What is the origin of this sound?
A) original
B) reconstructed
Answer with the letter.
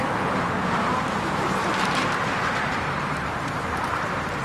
B